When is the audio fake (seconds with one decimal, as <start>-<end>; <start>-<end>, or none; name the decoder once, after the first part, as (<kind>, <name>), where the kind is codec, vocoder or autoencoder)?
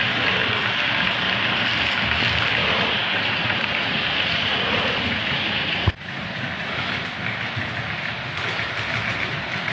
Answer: 2.6-6.8 (vocoder, Vocos)